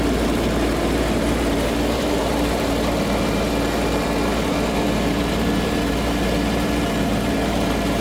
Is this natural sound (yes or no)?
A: no